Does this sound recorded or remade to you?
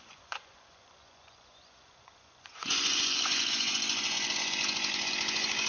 remade